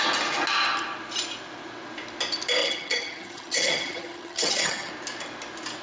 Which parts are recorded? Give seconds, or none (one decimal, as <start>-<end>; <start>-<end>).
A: 0.0-2.6; 4.9-5.8